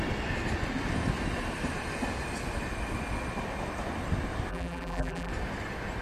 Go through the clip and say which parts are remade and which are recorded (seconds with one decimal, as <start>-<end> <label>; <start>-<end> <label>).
0.0-4.5 recorded; 4.5-5.3 remade; 5.3-6.0 recorded